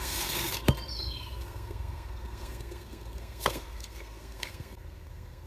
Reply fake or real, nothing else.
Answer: fake